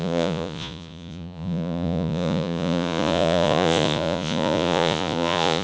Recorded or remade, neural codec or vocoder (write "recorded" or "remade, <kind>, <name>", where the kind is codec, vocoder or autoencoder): remade, vocoder, Vocos